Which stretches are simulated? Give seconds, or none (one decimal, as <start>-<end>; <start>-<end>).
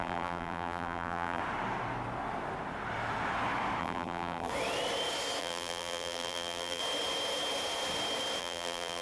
0.0-1.4; 3.8-4.5; 5.4-6.8; 8.4-9.0